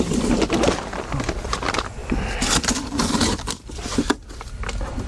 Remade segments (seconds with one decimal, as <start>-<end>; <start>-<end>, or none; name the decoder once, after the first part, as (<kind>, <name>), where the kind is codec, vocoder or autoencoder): none